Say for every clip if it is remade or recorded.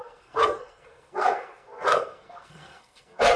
remade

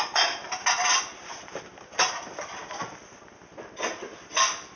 recorded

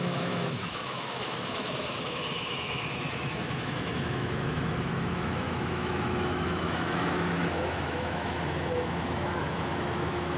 remade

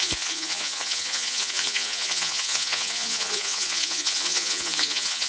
remade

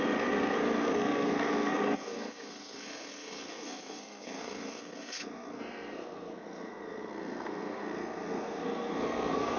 remade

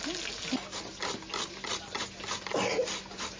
recorded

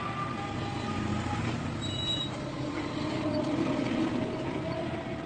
recorded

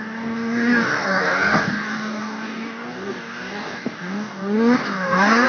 remade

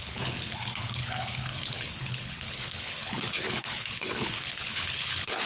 remade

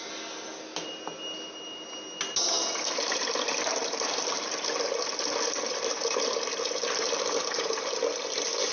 recorded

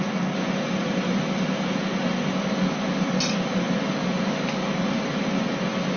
recorded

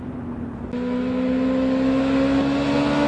recorded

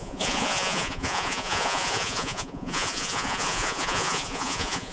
remade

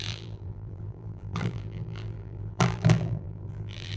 remade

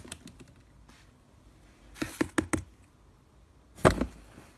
recorded